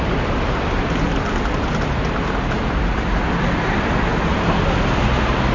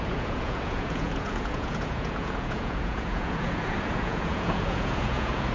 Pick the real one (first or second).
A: first